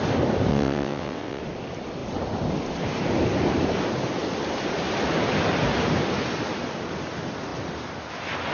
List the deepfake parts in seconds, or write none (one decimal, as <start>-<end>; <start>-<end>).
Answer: 0.5-1.4

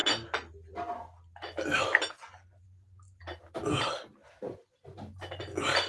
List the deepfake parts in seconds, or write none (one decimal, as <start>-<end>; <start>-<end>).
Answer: none

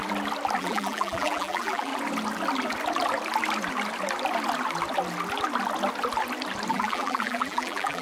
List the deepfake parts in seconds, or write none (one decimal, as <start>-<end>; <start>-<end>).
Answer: 0.6-1.9; 6.7-8.0

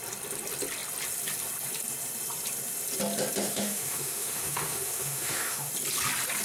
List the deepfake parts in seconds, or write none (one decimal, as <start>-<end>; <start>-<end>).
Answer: 3.4-5.7

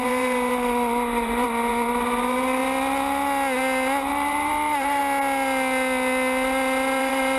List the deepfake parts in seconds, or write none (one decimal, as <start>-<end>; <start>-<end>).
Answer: 0.0-2.6; 4.1-5.0; 7.0-7.4

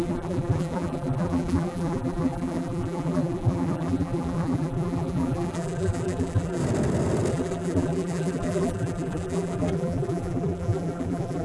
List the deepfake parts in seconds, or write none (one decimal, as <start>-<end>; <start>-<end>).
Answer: 0.0-6.6; 7.3-11.4

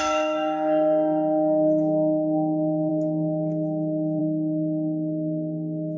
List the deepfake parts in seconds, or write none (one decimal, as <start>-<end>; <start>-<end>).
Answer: 0.0-6.0

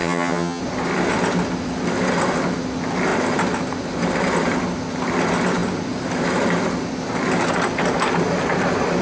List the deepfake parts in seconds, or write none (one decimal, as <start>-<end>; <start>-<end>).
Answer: 0.0-0.6